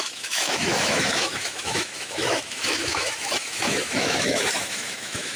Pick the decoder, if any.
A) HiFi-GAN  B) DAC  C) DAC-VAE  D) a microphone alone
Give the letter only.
C